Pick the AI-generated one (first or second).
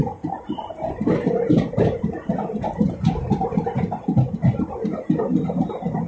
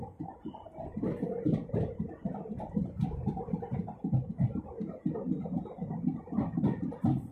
second